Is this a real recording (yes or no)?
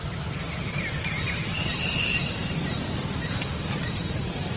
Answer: no